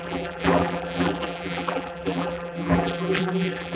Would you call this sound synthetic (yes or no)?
yes